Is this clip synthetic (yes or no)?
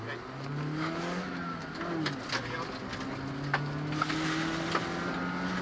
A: no